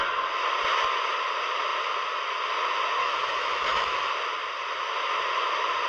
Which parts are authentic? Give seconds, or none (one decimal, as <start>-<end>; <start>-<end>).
0.0-3.0; 4.1-5.9